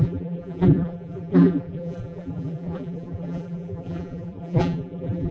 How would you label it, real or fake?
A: fake